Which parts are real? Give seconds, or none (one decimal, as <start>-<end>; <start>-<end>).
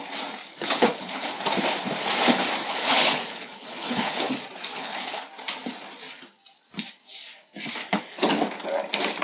0.0-0.4; 1.4-2.6; 4.3-4.7; 5.2-7.8; 8.3-9.2